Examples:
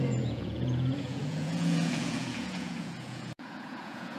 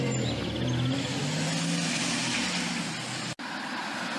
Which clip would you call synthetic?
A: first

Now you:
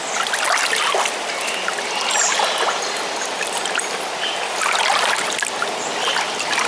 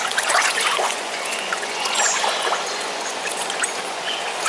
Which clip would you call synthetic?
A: second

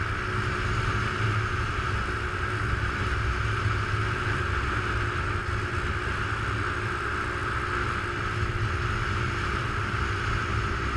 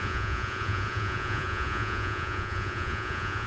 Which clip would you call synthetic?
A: second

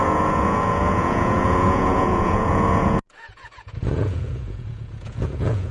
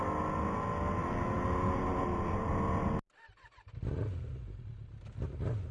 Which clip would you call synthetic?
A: first